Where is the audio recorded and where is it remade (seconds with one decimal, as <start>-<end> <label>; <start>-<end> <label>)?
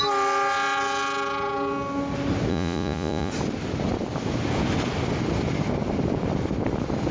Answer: 0.0-2.5 recorded; 2.5-3.3 remade; 3.3-7.1 recorded